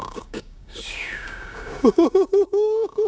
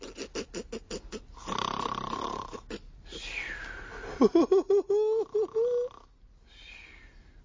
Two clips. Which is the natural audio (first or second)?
second